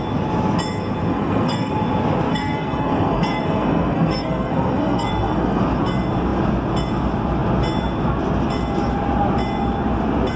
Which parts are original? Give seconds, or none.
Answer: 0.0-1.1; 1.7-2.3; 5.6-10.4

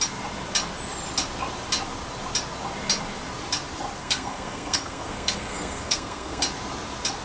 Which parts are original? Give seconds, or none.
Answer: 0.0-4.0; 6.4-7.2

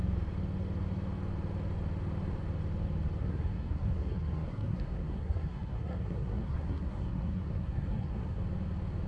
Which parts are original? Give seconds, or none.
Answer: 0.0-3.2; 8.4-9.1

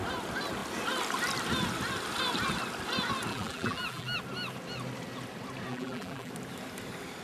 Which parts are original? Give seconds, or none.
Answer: 0.0-3.3; 4.2-5.7; 6.3-7.2

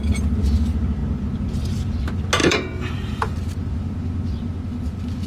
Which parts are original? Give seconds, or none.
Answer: 0.0-2.4; 3.3-5.3

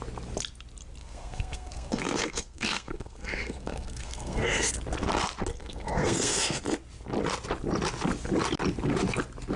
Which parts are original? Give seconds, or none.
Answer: 0.0-1.0; 4.7-5.6; 6.6-9.6

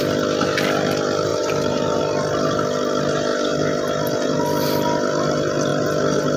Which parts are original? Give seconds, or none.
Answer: 0.0-1.3; 2.0-6.4